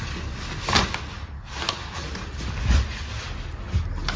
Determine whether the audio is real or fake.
real